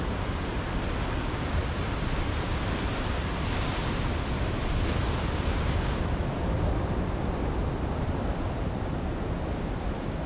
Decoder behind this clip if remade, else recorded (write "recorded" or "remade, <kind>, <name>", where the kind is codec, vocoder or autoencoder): recorded